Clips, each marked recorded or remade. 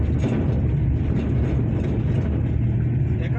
recorded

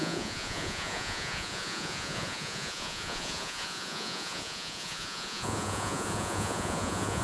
remade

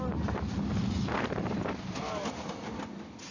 recorded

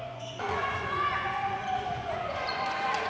remade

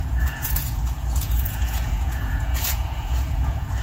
remade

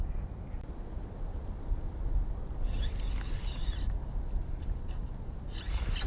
recorded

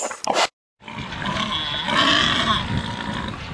recorded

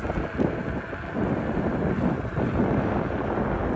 recorded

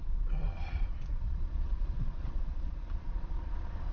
remade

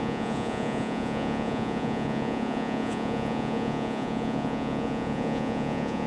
remade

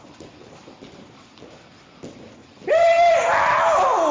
recorded